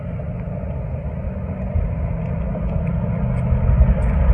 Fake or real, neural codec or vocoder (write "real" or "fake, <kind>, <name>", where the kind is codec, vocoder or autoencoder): real